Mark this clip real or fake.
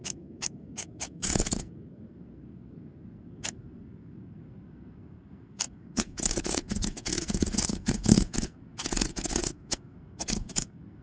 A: fake